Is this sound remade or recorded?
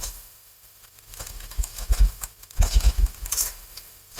remade